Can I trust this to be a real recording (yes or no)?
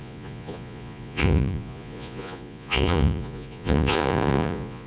no